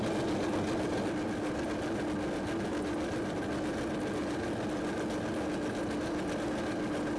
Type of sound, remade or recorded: recorded